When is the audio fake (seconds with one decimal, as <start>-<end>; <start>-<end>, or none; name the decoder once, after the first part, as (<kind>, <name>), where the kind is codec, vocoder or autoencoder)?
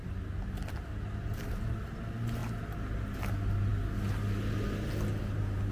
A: 1.3-1.8 (vocoder, BigVGAN v2)